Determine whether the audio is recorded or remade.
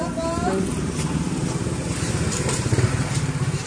remade